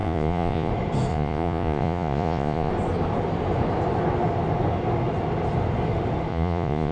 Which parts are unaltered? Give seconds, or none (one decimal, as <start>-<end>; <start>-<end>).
0.7-1.1; 2.7-6.3